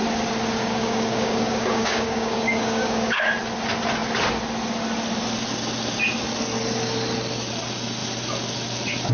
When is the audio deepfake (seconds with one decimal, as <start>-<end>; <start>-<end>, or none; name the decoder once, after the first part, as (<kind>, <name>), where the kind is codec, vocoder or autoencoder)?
0.6-3.2 (codec, DAC)